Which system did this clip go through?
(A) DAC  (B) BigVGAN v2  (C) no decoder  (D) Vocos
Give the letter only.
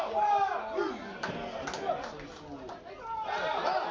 C